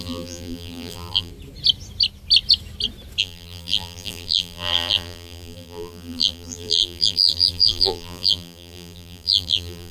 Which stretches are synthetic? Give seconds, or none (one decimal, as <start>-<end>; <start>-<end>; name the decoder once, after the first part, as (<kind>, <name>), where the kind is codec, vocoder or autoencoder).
0.0-1.3 (vocoder, BigVGAN v2); 3.2-9.9